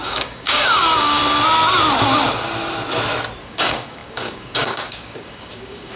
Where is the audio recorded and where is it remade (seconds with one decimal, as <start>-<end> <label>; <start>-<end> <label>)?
0.0-1.2 remade; 1.2-3.4 recorded; 3.4-6.0 remade